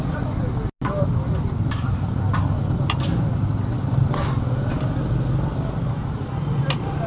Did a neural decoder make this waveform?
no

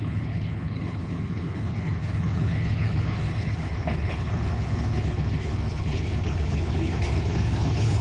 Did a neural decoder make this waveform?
yes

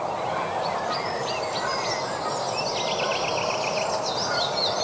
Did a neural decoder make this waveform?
no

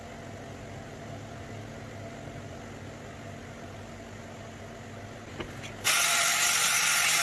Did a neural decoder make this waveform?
no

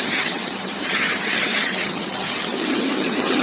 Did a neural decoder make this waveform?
yes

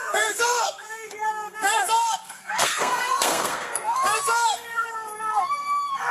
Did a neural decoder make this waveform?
yes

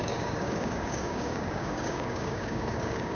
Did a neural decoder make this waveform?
yes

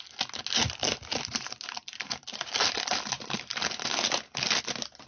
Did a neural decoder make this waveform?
no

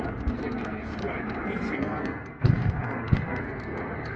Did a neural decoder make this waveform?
yes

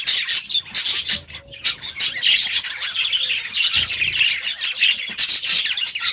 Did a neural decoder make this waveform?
no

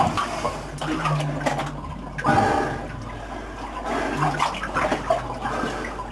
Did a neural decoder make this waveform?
no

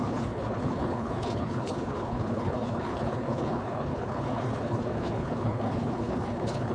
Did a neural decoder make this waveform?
yes